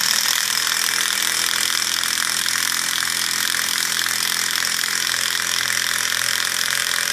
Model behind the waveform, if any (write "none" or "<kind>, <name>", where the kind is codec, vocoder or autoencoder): vocoder, BigVGAN v2